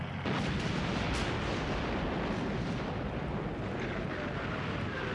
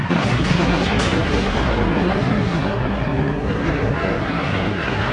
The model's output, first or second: second